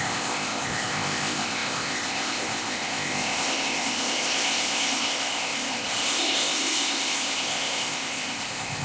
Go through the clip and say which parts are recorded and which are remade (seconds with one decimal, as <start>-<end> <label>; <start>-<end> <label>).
0.0-8.8 remade